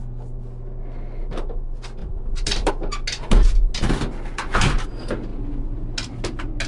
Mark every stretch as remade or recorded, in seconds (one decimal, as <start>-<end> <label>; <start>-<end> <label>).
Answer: 0.0-2.0 recorded; 2.0-2.7 remade; 2.7-6.7 recorded